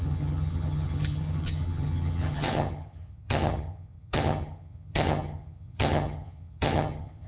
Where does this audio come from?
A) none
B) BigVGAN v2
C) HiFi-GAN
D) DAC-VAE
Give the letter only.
C